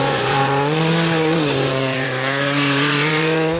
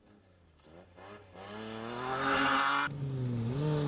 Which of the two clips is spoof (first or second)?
first